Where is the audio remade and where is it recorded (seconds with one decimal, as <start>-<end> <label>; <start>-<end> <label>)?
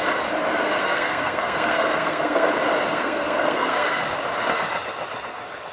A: 0.0-0.7 recorded; 0.7-2.5 remade; 2.5-2.9 recorded; 2.9-4.0 remade; 4.0-5.7 recorded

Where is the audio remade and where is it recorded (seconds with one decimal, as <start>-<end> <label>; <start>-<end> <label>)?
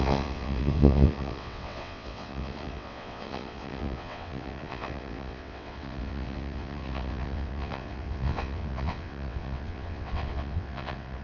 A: 0.0-11.2 remade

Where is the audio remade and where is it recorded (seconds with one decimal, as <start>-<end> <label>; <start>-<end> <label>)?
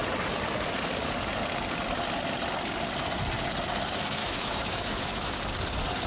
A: 0.0-4.2 recorded; 4.2-5.4 remade; 5.4-6.1 recorded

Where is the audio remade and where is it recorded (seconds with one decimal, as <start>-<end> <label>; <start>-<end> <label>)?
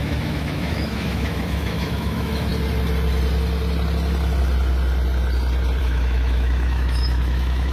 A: 0.0-2.5 remade; 2.5-5.8 recorded; 5.8-7.7 remade